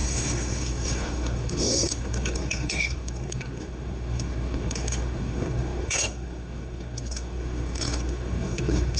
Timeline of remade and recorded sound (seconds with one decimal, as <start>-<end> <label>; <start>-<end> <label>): 0.0-9.0 remade